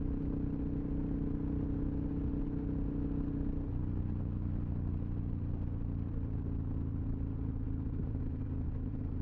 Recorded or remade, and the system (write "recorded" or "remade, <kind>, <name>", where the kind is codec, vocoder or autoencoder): recorded